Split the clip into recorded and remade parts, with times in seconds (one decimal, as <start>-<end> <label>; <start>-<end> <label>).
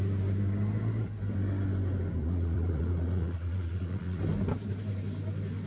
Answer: 0.0-2.2 recorded; 2.2-4.2 remade; 4.2-5.7 recorded